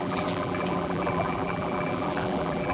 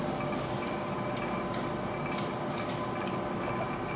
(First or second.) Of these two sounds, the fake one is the first